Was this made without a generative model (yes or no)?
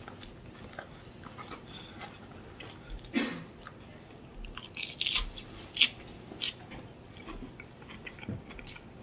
yes